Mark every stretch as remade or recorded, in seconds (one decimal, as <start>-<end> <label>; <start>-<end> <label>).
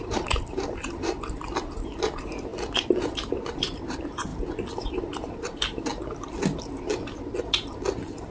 0.0-2.5 remade; 2.5-3.0 recorded; 3.0-4.3 remade; 4.3-4.9 recorded; 4.9-5.9 remade; 5.9-8.3 recorded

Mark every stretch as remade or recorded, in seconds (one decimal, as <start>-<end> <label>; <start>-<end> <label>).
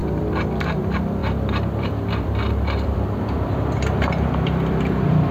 0.0-5.3 remade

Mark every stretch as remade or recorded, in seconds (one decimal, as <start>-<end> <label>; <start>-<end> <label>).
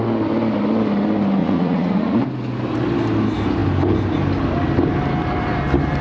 0.0-1.4 recorded; 1.4-2.2 remade; 2.2-6.0 recorded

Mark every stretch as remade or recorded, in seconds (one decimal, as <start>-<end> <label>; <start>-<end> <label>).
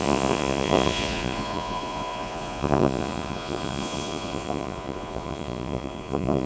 0.0-6.5 remade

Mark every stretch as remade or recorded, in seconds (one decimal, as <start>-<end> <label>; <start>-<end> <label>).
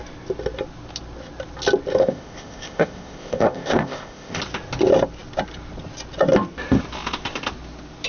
0.0-2.0 recorded; 2.0-4.4 remade; 4.4-8.1 recorded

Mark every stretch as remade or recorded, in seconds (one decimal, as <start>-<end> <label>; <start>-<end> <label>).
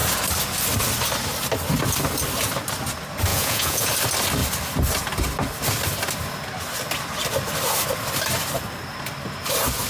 0.0-3.3 recorded; 3.3-3.9 remade; 3.9-9.9 recorded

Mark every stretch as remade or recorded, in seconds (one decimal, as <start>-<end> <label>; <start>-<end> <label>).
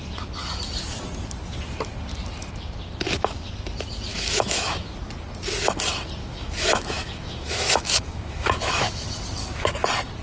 0.0-4.1 recorded; 4.1-4.9 remade; 4.9-6.2 recorded; 6.2-9.2 remade; 9.2-10.2 recorded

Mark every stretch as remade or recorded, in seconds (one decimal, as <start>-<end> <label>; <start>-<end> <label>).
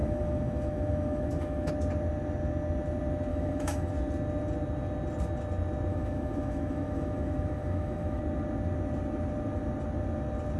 0.0-1.7 remade; 1.7-3.3 recorded; 3.3-3.9 remade; 3.9-5.9 recorded; 5.9-8.2 remade; 8.2-10.6 recorded